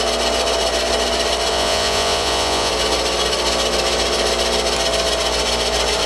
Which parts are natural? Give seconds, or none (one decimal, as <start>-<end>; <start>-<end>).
0.0-1.5; 2.7-6.1